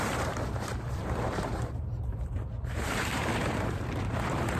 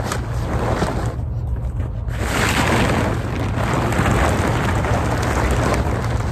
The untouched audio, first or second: second